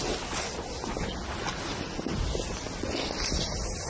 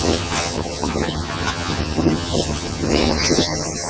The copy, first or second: second